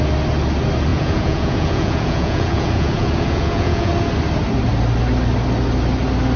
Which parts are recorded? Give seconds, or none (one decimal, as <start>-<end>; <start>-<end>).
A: 0.0-0.9; 3.9-6.4